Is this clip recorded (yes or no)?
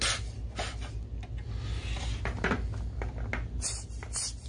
yes